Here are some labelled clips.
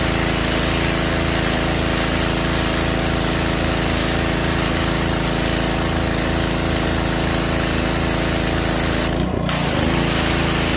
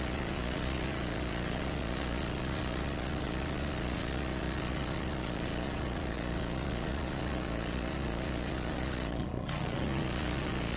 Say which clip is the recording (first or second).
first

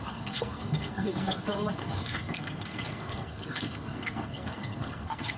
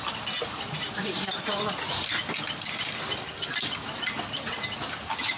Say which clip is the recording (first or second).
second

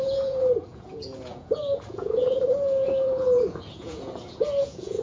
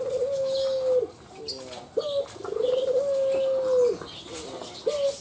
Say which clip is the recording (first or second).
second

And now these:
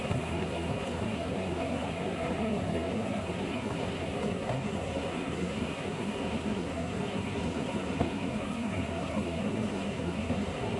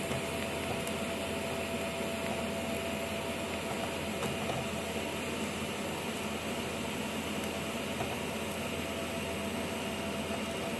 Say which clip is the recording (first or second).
second